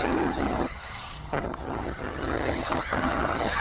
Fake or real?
fake